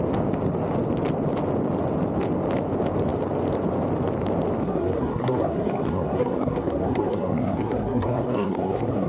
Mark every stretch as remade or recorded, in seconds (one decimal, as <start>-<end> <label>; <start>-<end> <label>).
0.0-4.6 recorded; 4.6-9.1 remade